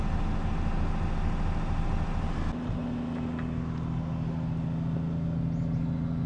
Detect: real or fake real